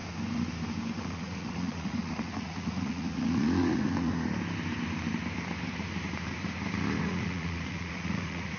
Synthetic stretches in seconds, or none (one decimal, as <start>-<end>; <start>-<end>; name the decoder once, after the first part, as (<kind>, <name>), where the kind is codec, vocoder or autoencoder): 1.0-4.1 (vocoder, Vocos); 7.0-8.6